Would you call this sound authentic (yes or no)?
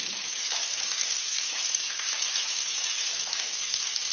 no